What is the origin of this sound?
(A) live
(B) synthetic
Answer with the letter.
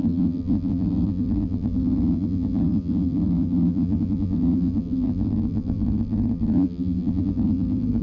B